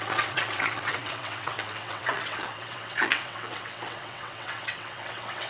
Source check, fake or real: fake